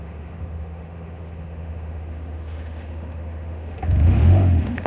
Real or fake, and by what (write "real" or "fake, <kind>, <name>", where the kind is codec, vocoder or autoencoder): fake, autoencoder, DAC-VAE